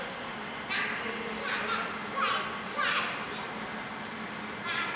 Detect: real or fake real